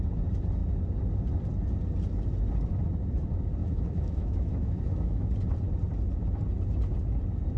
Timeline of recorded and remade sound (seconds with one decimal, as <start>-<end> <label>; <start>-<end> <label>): 0.0-3.6 recorded; 3.6-5.3 remade; 5.3-7.6 recorded